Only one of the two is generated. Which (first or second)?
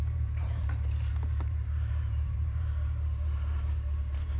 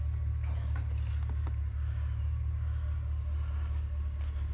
first